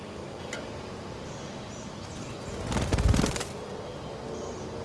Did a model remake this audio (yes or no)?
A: no